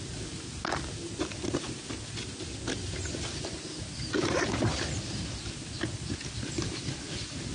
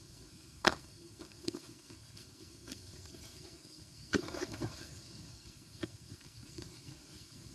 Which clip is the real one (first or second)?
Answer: first